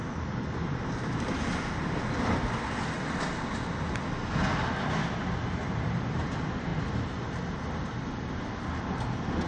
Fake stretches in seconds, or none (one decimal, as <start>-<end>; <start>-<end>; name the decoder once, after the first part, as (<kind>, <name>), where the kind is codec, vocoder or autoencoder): 5.6-6.3 (vocoder, BigVGAN v2); 6.7-7.4